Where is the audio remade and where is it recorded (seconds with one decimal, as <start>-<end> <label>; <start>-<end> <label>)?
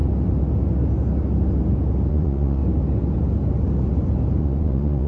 0.0-2.1 recorded; 2.1-2.6 remade; 2.6-4.4 recorded; 4.4-5.1 remade